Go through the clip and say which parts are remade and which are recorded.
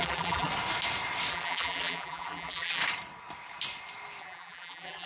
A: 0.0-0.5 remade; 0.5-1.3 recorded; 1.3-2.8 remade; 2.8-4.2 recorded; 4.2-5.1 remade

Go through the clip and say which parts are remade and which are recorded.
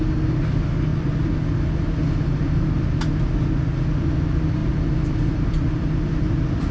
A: 0.0-4.6 recorded; 4.6-6.1 remade; 6.1-6.7 recorded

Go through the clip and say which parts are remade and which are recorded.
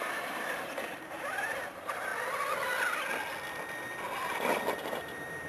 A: 0.0-2.1 remade; 2.1-4.8 recorded; 4.8-5.5 remade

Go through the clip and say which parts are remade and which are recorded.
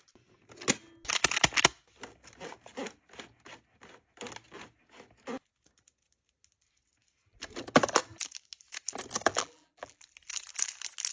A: 0.0-9.3 recorded; 9.3-10.0 remade; 10.0-11.1 recorded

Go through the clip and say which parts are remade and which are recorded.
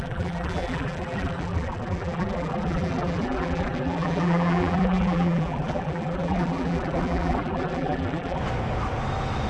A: 0.0-8.4 remade; 8.4-9.5 recorded